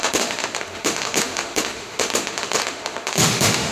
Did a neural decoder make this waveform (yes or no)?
yes